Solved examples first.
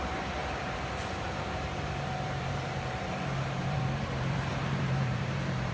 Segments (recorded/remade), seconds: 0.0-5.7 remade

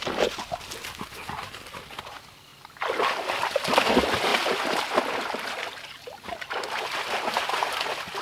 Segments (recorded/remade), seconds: 0.0-8.2 recorded

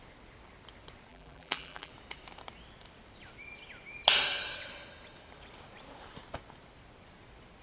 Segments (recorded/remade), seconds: 0.0-1.1 recorded; 1.1-1.9 remade; 1.9-7.6 recorded

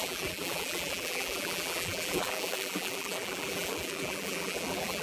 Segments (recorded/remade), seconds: 0.0-5.0 remade

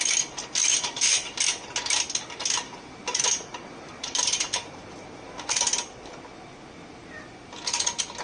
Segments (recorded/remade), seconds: 0.0-0.7 recorded; 0.7-1.4 remade; 1.4-3.0 recorded; 3.0-5.9 remade; 5.9-8.2 recorded